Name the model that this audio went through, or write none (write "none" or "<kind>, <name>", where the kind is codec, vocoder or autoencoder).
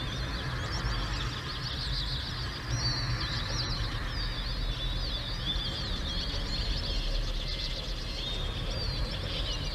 none